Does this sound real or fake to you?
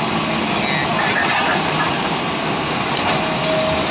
real